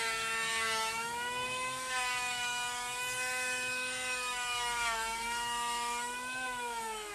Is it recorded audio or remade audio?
remade